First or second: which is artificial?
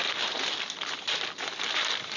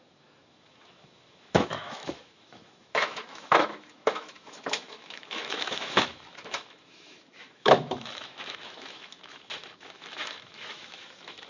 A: second